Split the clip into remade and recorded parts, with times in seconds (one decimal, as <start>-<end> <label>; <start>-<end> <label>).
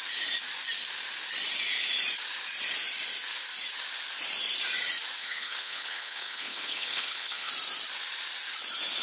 0.0-5.2 recorded; 5.2-7.5 remade; 7.5-9.0 recorded